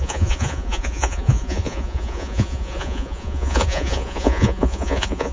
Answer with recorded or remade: remade